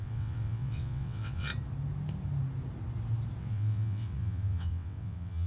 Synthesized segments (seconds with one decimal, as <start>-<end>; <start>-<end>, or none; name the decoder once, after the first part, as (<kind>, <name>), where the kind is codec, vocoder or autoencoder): 0.0-1.5 (vocoder, WaveNeXt); 3.4-5.5